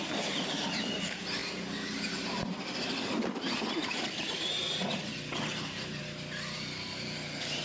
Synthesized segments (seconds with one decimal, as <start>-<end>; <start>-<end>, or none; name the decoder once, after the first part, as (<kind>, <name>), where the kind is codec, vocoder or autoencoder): none